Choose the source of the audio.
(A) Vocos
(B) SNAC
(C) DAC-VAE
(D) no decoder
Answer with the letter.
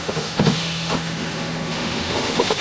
C